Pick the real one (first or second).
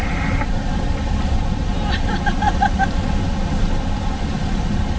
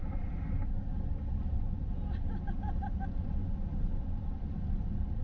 second